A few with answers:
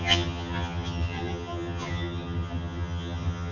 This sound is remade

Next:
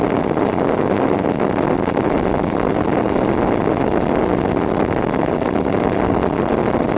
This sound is recorded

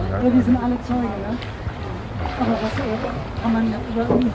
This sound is recorded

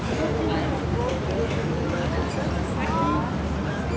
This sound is recorded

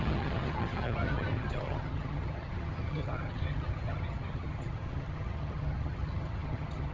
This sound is remade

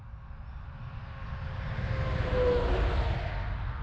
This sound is recorded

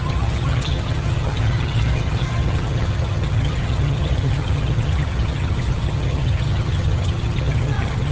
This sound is remade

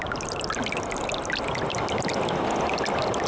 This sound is recorded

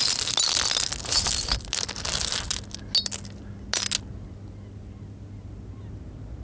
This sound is recorded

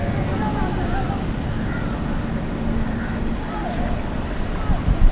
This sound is recorded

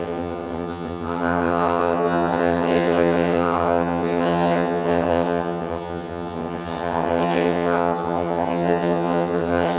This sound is remade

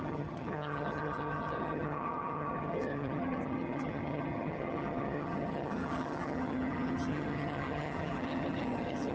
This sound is remade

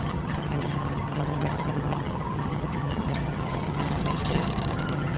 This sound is remade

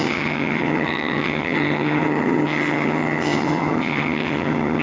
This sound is remade